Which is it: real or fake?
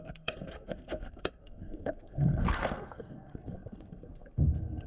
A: fake